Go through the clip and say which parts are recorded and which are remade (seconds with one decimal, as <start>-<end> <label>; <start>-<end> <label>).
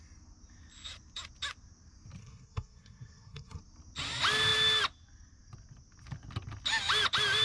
0.0-2.2 recorded; 2.2-3.6 remade; 3.6-7.4 recorded